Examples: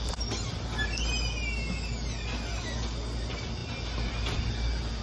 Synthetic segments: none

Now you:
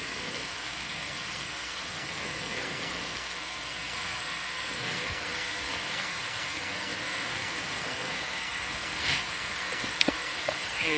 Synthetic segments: 0.0-11.0 (codec, SNAC)